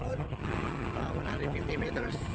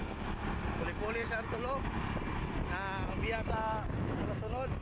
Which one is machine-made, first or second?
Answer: first